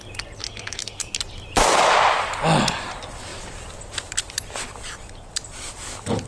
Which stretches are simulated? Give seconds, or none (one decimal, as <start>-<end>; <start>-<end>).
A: 0.4-1.2